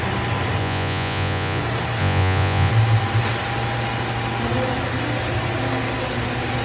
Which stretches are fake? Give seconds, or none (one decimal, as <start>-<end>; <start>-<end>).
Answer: 0.6-1.6; 2.0-2.7

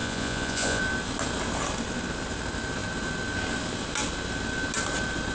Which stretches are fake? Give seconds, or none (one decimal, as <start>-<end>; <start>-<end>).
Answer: 0.0-0.8

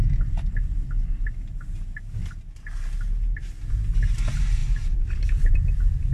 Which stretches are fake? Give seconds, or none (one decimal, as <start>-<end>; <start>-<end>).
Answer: none

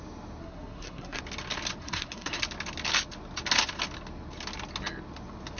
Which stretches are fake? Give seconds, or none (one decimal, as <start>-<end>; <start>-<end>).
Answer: 0.4-1.2; 1.8-2.4

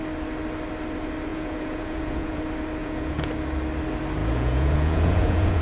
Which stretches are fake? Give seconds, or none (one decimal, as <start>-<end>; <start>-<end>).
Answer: 1.3-2.4; 2.8-3.3; 4.2-5.6

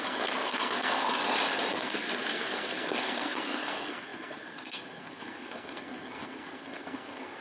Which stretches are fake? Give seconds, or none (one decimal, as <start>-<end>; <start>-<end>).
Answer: 0.0-1.2; 1.7-7.4

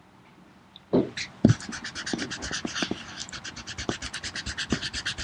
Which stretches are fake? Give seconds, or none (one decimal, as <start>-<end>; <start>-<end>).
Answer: none

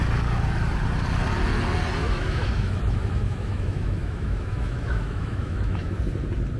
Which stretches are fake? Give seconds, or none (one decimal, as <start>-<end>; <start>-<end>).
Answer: 2.0-6.0